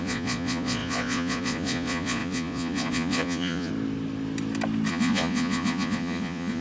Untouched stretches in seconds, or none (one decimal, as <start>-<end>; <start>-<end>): 3.7-4.9